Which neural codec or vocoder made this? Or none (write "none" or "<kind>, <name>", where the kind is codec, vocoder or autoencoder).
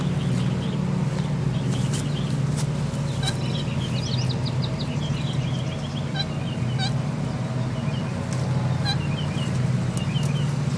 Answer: none